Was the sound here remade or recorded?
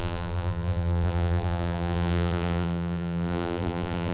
remade